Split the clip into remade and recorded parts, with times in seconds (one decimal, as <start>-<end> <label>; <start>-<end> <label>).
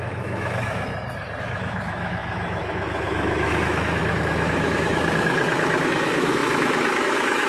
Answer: 0.0-0.9 remade; 0.9-1.4 recorded; 1.4-7.5 remade